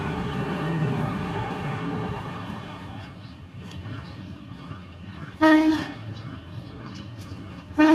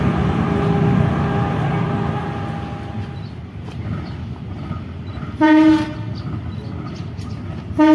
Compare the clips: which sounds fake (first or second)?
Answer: first